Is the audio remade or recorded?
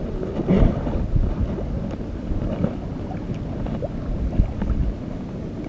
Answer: recorded